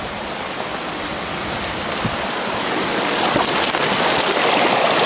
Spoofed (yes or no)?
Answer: no